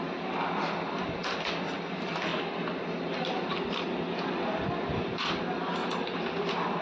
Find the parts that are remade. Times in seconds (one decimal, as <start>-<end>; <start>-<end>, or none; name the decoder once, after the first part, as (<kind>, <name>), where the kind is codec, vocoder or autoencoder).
none